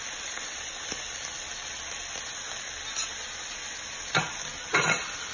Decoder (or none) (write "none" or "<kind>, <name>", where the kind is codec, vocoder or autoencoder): none